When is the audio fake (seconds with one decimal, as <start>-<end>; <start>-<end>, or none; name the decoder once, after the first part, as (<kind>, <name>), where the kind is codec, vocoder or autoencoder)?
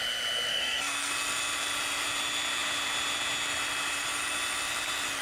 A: 0.5-1.1 (codec, SNAC)